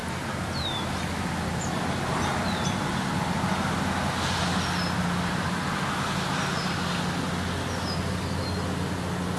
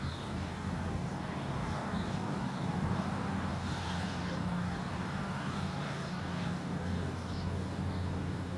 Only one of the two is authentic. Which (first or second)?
first